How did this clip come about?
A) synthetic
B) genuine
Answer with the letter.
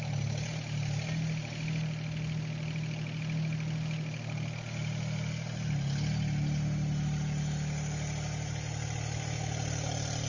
B